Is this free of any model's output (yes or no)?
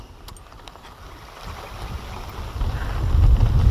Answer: yes